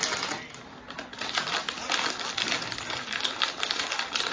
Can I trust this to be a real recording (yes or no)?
yes